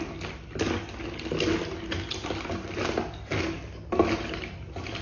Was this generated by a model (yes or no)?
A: no